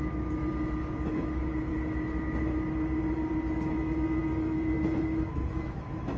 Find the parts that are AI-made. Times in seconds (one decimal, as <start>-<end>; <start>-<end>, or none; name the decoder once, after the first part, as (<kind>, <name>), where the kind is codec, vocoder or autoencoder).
0.0-1.7 (autoencoder, DAC-VAE); 3.7-6.2